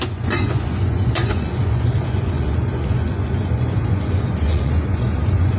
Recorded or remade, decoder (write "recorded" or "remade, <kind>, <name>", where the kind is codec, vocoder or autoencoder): remade, vocoder, Vocos